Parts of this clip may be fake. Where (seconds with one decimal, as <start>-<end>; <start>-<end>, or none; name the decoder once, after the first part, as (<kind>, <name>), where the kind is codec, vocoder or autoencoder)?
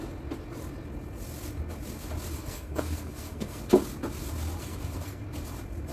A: 2.4-3.6 (codec, SNAC); 4.6-5.2